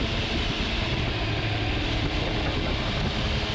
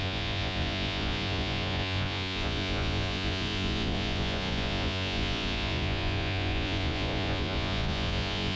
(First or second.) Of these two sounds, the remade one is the second